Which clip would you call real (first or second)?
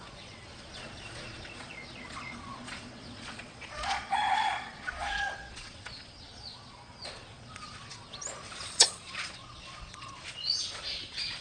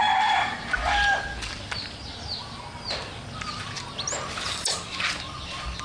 second